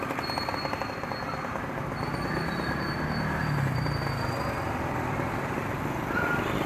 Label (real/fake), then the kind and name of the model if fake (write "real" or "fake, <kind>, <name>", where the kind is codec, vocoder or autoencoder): real